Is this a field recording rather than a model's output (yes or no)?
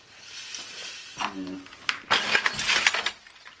yes